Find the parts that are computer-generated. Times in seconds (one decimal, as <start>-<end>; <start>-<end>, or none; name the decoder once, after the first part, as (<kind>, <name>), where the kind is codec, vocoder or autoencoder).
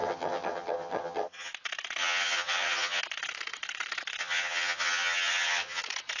0.0-1.5 (vocoder, HiFi-GAN); 2.0-3.0; 4.2-5.8